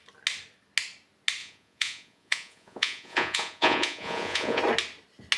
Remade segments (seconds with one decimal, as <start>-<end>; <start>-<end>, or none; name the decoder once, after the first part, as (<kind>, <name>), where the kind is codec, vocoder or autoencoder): 1.4-4.6 (vocoder, Vocos)